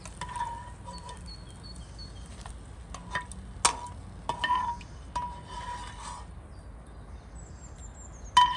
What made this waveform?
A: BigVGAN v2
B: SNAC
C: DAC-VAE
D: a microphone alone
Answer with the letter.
D